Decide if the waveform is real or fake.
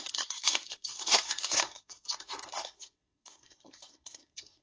fake